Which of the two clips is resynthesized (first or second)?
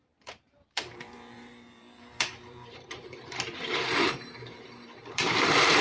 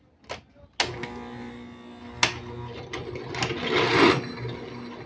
first